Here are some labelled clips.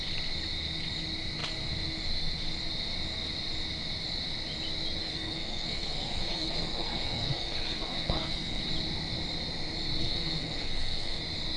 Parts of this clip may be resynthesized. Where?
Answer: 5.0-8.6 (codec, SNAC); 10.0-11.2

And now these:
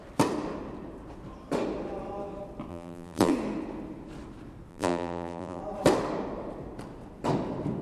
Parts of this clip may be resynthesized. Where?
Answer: 2.7-3.3 (vocoder, BigVGAN v2); 4.7-5.6

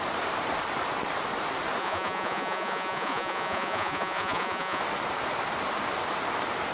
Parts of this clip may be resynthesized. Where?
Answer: 1.8-4.8 (vocoder, Vocos)

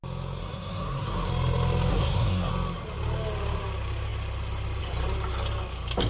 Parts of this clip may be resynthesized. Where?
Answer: 0.4-1.3 (codec, SNAC); 1.9-2.5

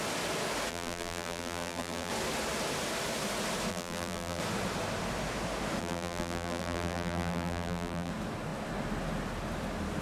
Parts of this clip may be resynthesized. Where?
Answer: 0.7-2.1 (vocoder, BigVGAN v2); 3.7-4.4; 5.8-8.1

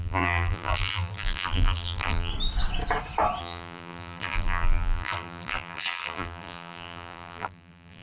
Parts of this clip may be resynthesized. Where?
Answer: 0.0-2.3 (vocoder, BigVGAN v2); 3.4-8.0

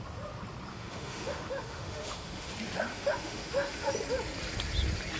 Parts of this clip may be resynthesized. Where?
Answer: 0.7-2.5 (autoencoder, DAC-VAE); 2.9-3.9